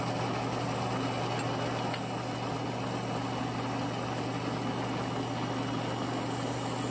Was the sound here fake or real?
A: real